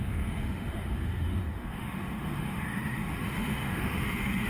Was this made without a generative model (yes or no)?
no